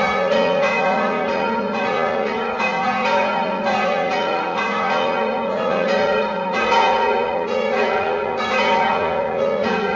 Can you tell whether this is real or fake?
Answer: fake